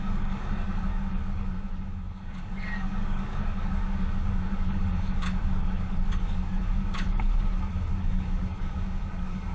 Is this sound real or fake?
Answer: fake